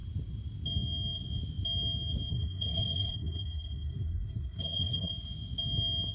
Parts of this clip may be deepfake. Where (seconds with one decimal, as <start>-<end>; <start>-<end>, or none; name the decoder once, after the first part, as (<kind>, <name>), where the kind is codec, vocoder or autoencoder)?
2.3-5.1 (codec, SNAC)